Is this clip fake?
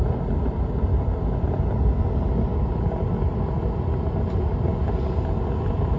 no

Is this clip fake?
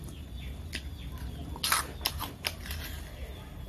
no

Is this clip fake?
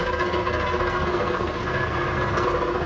yes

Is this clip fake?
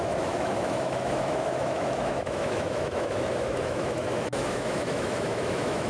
yes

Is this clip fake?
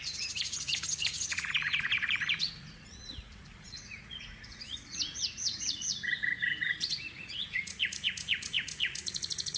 yes